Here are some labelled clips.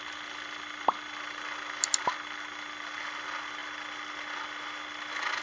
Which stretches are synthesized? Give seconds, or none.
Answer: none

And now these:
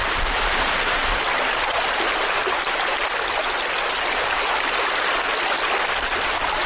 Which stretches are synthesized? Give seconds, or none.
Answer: 0.0-0.7

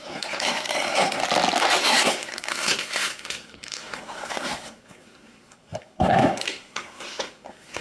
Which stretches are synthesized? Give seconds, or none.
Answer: 0.0-1.2; 1.8-7.8

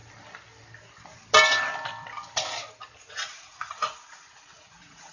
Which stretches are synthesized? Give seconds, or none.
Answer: 3.1-5.1